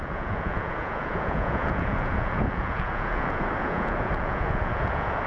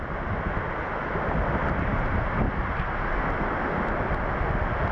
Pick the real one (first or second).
second